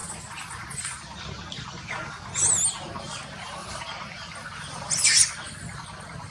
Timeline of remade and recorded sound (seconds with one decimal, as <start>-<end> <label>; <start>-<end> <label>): 0.0-3.6 recorded; 3.6-5.3 remade; 5.3-6.3 recorded